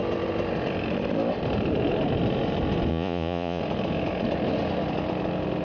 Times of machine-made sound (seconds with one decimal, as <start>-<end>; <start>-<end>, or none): 2.9-3.6